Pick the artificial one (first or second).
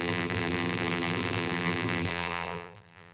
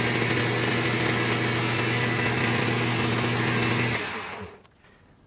first